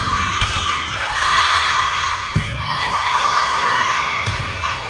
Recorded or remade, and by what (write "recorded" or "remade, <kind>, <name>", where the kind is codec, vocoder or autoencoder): remade, codec, SNAC